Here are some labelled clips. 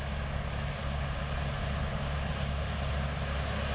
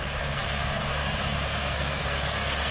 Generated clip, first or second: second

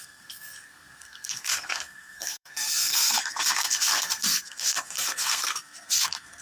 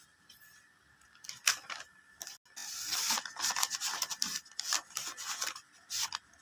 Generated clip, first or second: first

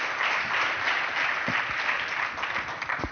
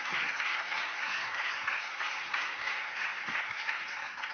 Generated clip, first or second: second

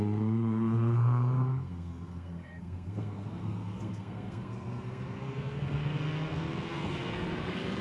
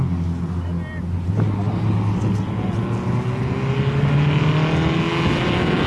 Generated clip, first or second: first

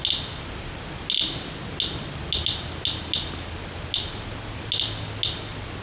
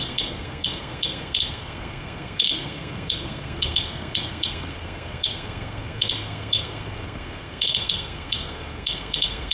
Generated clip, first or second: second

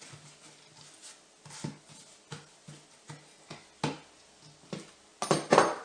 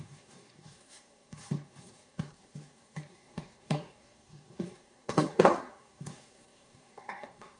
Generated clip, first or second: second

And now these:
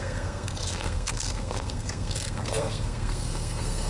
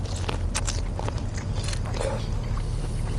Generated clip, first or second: first